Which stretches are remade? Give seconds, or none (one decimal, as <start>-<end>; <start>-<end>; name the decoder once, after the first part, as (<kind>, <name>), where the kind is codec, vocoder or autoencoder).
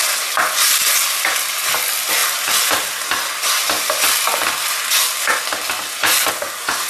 none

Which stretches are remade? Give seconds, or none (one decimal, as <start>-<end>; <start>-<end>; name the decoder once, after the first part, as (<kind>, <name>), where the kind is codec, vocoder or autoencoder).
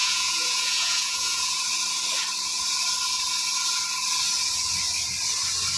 0.0-1.6 (vocoder, Vocos)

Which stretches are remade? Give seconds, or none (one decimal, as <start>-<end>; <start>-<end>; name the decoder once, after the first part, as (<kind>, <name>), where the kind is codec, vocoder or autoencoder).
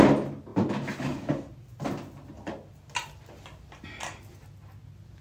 none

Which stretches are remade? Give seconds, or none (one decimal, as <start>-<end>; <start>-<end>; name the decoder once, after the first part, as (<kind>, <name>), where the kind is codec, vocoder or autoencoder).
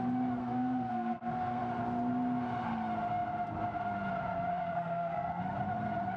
0.4-1.6 (codec, SNAC); 4.5-5.4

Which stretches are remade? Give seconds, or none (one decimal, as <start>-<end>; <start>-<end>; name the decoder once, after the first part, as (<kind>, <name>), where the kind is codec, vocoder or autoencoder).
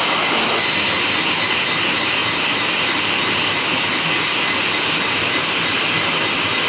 none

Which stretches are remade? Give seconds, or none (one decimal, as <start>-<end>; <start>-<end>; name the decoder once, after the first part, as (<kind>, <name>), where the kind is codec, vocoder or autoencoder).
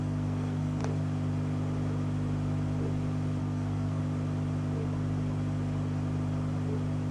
0.0-0.8 (codec, SNAC); 3.4-4.0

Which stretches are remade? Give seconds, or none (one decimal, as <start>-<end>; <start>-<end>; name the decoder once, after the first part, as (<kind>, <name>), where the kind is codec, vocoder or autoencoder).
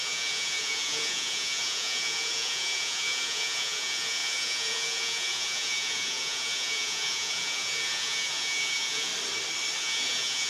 0.0-9.1 (vocoder, Vocos); 9.8-10.5